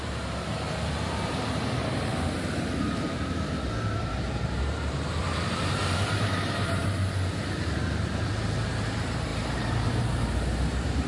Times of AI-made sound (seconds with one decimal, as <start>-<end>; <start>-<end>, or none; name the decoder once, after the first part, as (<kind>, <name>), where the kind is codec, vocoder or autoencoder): 0.0-11.1 (vocoder, BigVGAN v2)

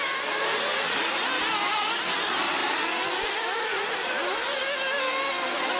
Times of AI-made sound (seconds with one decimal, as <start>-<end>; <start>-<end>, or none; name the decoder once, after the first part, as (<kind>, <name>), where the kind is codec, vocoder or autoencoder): 2.6-3.6 (vocoder, BigVGAN v2)

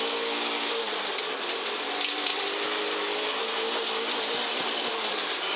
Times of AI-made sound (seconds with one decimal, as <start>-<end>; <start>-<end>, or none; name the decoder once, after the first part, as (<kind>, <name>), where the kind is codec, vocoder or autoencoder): 0.0-2.3 (vocoder, BigVGAN v2); 3.4-5.6